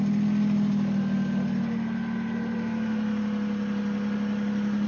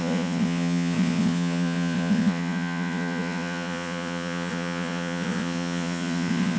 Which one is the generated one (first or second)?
second